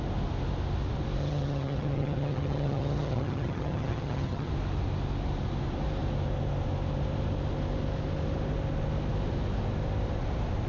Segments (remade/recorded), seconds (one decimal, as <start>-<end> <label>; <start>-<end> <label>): 0.0-1.2 recorded; 1.2-4.5 remade; 4.5-10.7 recorded